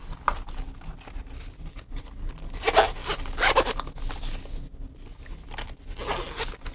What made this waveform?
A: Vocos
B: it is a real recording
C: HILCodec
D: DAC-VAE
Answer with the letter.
B